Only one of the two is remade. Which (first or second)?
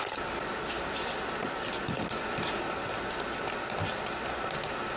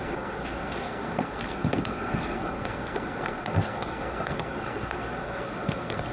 second